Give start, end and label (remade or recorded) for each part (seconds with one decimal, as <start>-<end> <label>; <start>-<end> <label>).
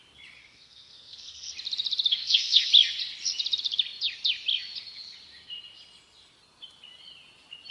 0.0-0.4 recorded; 0.4-1.5 remade; 1.5-2.1 recorded; 2.1-2.7 remade; 2.7-7.7 recorded